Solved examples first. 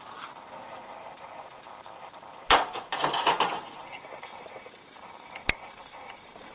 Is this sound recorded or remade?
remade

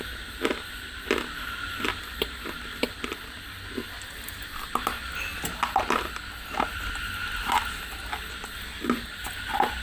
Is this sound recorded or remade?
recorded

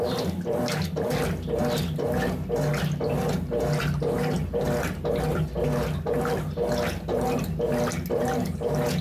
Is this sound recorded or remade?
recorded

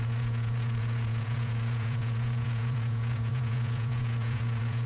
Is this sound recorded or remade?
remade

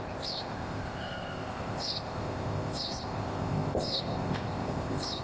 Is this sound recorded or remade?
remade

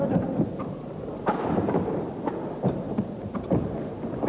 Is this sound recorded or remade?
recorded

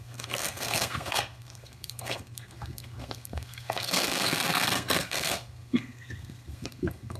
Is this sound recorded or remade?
remade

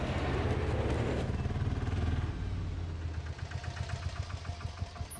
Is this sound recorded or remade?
recorded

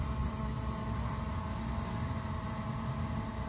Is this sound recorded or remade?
recorded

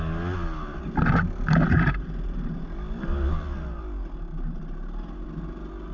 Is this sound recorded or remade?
recorded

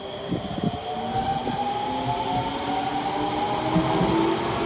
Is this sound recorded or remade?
recorded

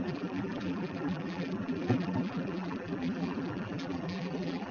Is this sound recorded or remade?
remade